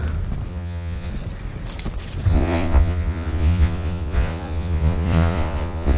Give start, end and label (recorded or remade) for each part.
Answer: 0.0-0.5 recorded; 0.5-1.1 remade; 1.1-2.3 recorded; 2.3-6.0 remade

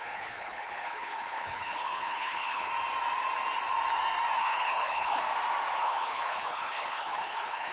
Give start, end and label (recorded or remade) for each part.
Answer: 0.0-2.7 remade; 2.7-4.4 recorded; 4.4-5.2 remade; 5.2-5.8 recorded; 5.8-7.7 remade

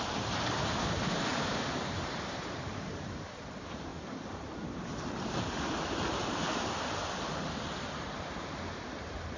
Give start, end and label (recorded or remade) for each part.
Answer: 0.0-3.9 remade; 3.9-8.8 recorded; 8.8-9.4 remade

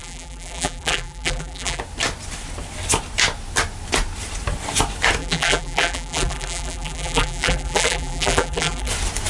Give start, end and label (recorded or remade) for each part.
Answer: 0.0-1.8 remade; 1.8-5.2 recorded; 5.2-8.9 remade; 8.9-9.3 recorded

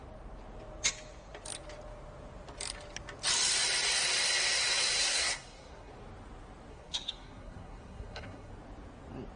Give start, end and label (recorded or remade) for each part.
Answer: 0.0-5.0 recorded; 5.0-5.9 remade; 5.9-6.7 recorded; 6.7-8.5 remade; 8.5-9.4 recorded

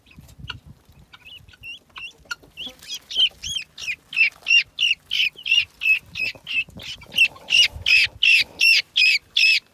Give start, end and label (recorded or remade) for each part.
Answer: 0.0-9.7 recorded

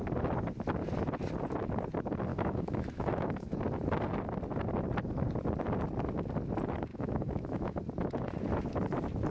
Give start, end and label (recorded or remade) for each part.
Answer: 0.0-2.3 recorded; 2.3-3.6 remade; 3.6-6.9 recorded; 6.9-7.8 remade; 7.8-9.3 recorded